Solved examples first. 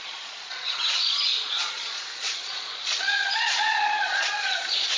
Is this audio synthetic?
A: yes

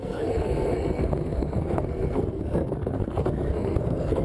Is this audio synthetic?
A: yes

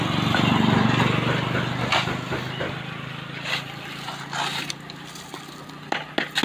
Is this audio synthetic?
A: no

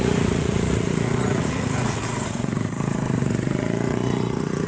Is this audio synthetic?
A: yes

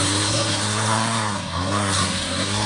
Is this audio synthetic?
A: yes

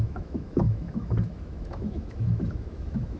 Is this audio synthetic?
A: yes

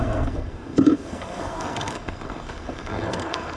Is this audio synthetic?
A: yes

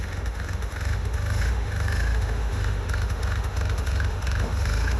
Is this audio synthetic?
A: yes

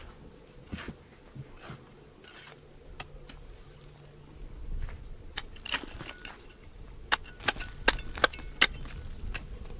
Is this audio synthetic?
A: no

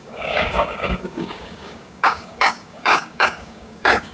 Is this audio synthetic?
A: yes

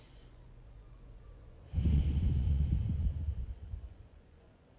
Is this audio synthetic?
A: yes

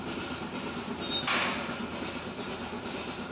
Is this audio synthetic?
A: no